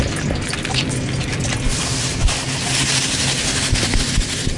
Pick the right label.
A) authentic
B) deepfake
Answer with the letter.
A